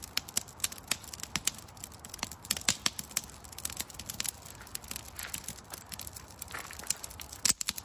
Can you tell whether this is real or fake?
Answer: real